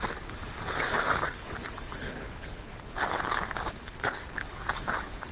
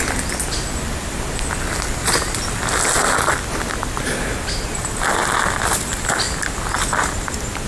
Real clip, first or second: second